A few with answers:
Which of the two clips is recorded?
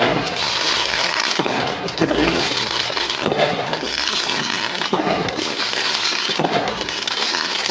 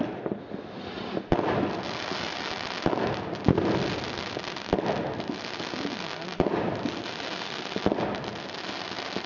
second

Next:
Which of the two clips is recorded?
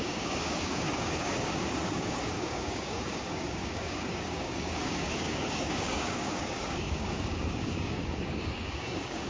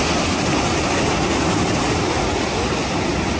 second